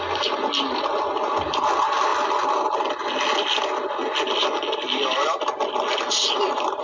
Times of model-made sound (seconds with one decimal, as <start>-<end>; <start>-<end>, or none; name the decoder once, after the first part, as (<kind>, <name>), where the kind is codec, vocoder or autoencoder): none